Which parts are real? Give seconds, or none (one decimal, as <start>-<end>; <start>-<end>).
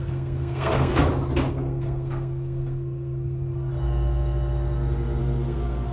0.9-1.5; 3.7-5.2